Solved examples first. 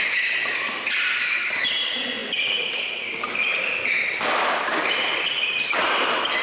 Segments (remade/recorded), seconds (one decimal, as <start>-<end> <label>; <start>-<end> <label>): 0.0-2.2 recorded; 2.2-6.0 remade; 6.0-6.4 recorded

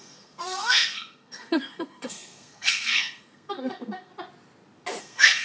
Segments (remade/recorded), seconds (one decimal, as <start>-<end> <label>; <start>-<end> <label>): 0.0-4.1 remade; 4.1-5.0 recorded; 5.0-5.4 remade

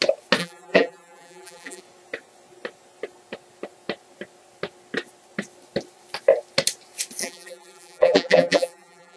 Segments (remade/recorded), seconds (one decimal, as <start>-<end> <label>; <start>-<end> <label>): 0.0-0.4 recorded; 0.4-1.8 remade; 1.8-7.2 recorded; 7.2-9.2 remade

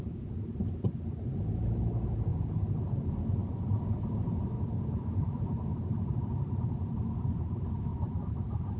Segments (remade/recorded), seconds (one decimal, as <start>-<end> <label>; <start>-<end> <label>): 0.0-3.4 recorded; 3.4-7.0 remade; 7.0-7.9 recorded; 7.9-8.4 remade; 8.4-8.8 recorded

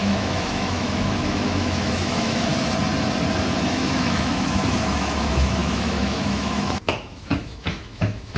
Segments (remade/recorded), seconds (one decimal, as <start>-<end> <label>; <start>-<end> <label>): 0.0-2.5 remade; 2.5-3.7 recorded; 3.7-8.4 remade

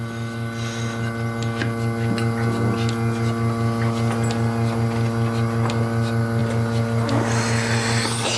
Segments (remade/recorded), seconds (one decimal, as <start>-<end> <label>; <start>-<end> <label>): 0.0-8.4 recorded